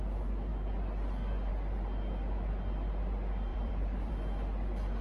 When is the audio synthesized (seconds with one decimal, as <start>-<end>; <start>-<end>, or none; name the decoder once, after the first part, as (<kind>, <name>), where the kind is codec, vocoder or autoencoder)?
3.5-4.1 (vocoder, BigVGAN v2)